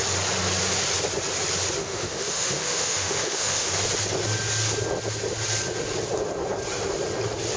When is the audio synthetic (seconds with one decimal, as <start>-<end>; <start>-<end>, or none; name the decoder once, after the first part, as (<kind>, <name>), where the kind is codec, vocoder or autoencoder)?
1.8-3.7 (autoencoder, DAC-VAE)